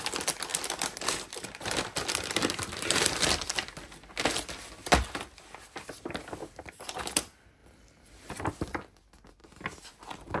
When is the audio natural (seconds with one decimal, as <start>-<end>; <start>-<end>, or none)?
0.0-0.5; 3.4-9.4